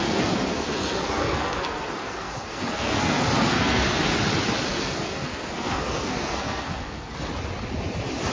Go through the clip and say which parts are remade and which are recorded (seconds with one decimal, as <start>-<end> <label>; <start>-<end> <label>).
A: 0.0-4.0 remade; 4.0-4.7 recorded; 4.7-7.1 remade; 7.1-8.3 recorded